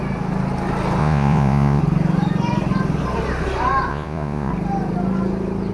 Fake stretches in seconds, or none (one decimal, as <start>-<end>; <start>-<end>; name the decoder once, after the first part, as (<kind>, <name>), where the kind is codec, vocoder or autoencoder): 1.0-1.8 (vocoder, Vocos); 3.9-4.5